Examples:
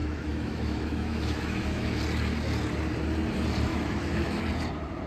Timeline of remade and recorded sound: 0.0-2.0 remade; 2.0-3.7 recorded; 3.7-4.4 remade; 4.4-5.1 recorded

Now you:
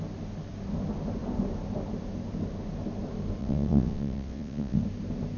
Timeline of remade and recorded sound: 0.0-3.4 recorded; 3.4-4.8 remade; 4.8-5.4 recorded

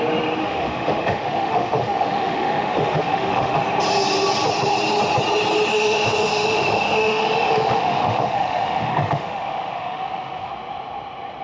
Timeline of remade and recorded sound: 0.0-0.4 recorded; 0.4-3.6 remade; 3.6-5.7 recorded; 5.7-10.5 remade; 10.5-11.4 recorded

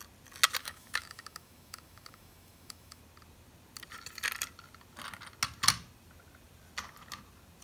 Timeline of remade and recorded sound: 0.0-0.6 recorded; 0.6-3.0 remade; 3.0-7.6 recorded

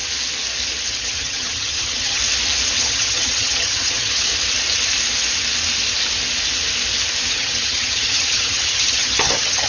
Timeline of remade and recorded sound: 0.0-0.9 recorded; 0.9-2.2 remade; 2.2-2.8 recorded; 2.8-4.3 remade; 4.3-7.3 recorded; 7.3-9.7 remade

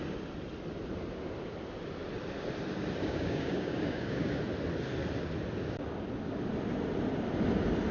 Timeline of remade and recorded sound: 0.0-3.0 recorded; 3.0-4.4 remade; 4.4-7.9 recorded

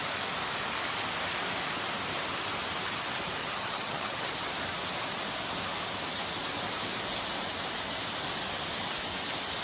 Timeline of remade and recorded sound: 0.0-3.4 recorded; 3.4-4.3 remade; 4.3-9.6 recorded